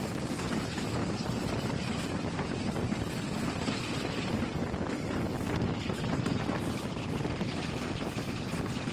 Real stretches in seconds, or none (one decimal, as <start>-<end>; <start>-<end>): 0.0-8.9